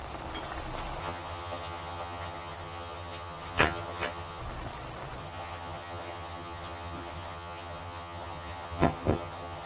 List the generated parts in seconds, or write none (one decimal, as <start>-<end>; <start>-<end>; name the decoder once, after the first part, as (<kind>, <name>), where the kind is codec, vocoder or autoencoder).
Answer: 1.0-4.4 (vocoder, HiFi-GAN); 5.2-9.7